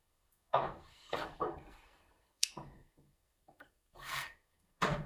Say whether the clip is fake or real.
fake